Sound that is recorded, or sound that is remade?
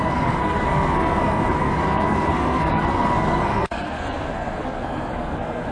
remade